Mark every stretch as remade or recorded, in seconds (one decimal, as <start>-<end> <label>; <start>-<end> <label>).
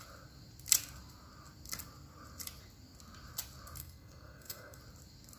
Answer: 0.0-3.8 recorded; 3.8-4.8 remade; 4.8-5.4 recorded